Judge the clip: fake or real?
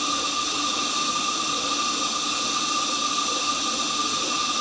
real